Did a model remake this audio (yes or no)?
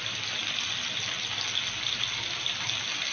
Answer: no